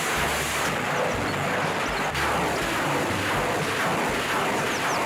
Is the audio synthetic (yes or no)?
no